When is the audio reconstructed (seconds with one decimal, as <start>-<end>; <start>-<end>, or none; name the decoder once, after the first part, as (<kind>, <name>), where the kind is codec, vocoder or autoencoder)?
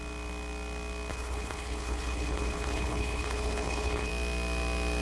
1.1-4.1 (codec, HILCodec)